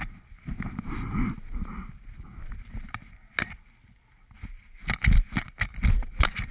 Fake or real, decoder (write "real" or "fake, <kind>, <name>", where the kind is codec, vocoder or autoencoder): real